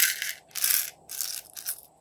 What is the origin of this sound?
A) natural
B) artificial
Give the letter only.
A